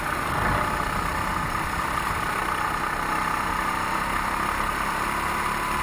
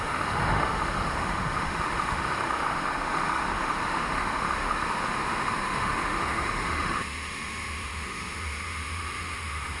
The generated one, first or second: second